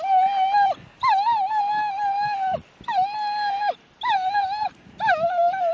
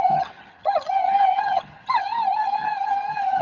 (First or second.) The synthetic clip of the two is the second